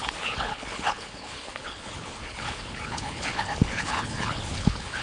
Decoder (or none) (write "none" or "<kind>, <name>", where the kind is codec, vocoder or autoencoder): codec, HILCodec